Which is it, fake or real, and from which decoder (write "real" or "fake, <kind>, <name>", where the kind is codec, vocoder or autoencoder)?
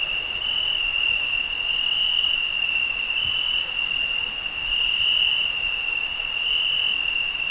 real